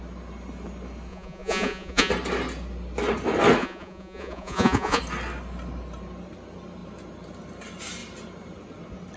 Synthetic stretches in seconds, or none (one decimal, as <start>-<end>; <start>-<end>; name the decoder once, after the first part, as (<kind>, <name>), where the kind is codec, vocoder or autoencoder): 1.1-2.1 (vocoder, Vocos); 3.6-5.0